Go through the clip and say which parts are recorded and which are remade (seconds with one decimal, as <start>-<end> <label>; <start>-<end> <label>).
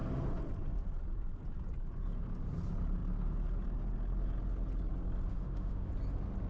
0.0-5.3 recorded; 5.3-5.9 remade; 5.9-6.5 recorded